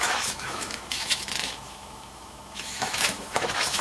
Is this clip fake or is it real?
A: fake